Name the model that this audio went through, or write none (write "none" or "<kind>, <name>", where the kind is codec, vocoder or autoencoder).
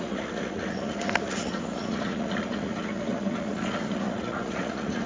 vocoder, Vocos